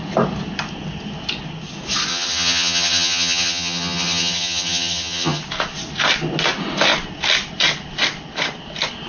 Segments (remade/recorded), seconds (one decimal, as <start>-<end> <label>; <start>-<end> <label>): 0.0-2.1 recorded; 2.1-5.4 remade; 5.4-9.1 recorded

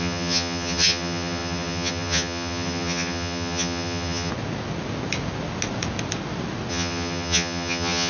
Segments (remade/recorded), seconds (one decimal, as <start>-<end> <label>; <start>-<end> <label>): 0.0-4.3 remade; 4.3-6.7 recorded; 6.7-8.1 remade

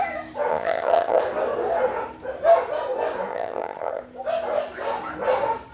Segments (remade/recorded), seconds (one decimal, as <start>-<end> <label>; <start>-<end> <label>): 0.0-0.5 recorded; 0.5-1.2 remade; 1.2-3.3 recorded; 3.3-4.0 remade; 4.0-5.7 recorded